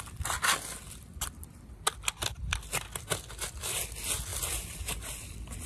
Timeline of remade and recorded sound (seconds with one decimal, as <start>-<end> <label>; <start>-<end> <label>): 0.0-5.7 recorded